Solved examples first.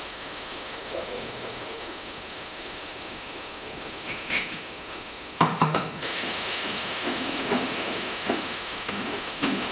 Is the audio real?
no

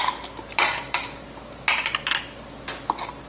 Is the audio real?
yes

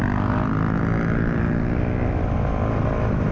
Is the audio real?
yes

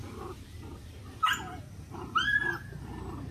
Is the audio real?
yes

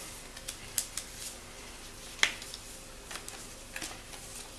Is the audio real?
yes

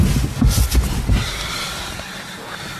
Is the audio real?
yes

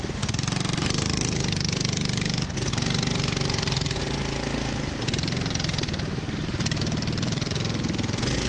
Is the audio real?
yes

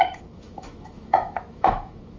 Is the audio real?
no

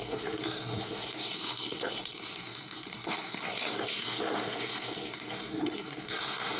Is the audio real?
no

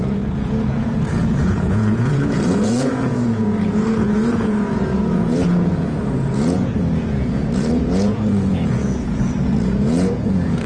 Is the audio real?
no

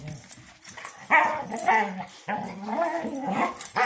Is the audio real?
yes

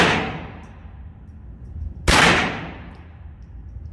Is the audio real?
yes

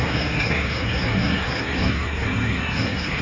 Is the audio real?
no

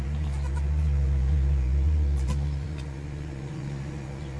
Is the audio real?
no